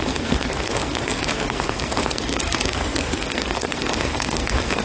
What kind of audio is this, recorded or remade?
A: remade